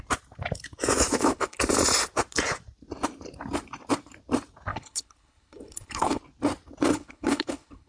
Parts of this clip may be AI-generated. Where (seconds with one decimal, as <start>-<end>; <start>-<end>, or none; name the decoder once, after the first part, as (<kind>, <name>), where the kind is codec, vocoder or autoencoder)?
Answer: 1.1-1.6 (codec, HILCodec); 4.7-6.2; 6.9-7.9